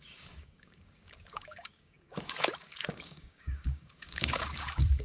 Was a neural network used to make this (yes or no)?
yes